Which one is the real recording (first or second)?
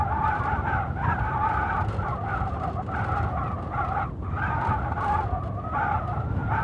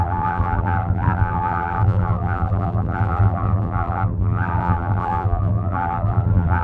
first